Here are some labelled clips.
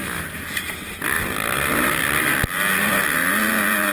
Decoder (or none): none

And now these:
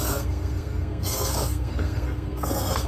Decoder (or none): codec, SNAC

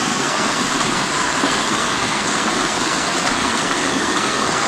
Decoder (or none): codec, SNAC